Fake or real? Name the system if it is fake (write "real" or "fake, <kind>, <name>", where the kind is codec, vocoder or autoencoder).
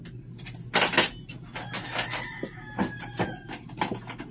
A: real